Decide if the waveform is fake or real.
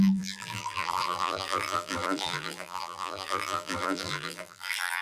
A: fake